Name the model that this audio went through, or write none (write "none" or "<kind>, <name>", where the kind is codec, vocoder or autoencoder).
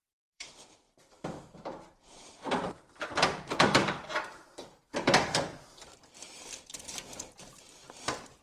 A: vocoder, BigVGAN v2